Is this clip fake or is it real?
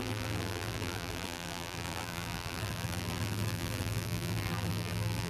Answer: fake